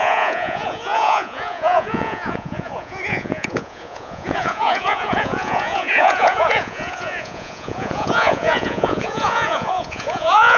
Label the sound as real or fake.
fake